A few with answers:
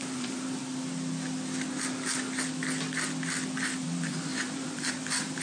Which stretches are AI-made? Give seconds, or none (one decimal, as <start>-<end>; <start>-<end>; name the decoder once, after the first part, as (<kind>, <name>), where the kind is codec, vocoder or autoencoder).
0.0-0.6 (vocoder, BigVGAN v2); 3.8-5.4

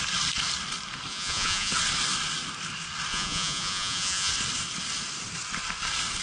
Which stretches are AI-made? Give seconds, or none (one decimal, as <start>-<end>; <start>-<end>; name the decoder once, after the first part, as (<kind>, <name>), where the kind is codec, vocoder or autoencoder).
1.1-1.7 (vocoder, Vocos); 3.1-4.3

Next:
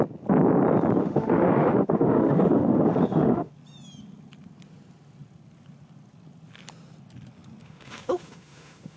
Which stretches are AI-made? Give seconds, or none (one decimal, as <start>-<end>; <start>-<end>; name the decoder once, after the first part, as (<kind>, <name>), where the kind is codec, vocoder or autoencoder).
1.0-3.5 (autoencoder, DAC-VAE); 7.6-9.0